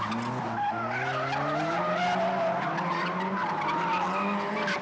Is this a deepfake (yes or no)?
no